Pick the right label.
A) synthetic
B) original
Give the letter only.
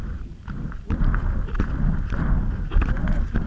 B